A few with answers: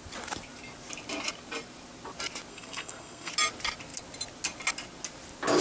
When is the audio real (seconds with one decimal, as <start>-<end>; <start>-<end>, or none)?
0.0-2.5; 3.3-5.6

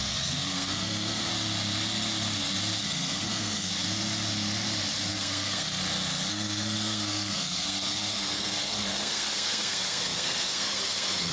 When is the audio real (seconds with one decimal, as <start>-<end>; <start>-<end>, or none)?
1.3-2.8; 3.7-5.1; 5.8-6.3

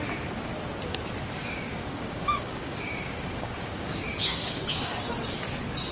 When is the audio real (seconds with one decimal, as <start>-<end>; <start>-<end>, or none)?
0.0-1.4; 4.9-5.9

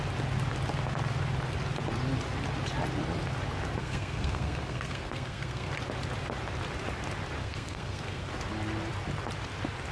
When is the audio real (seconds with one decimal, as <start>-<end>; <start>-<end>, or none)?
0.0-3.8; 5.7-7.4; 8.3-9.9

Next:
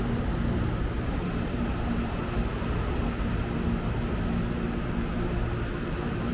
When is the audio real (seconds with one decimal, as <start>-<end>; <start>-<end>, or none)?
2.5-6.3

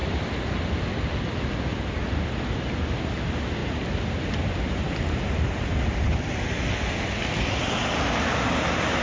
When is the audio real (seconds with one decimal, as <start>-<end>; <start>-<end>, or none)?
0.0-9.0

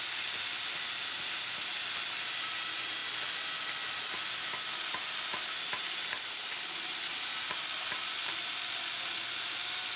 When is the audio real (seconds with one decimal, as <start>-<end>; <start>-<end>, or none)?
0.0-10.0

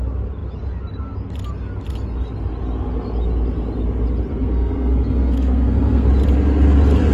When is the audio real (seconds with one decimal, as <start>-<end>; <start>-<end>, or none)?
0.0-4.3; 6.1-7.1